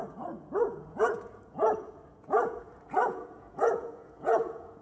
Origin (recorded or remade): remade